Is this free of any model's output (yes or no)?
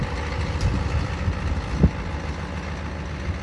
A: yes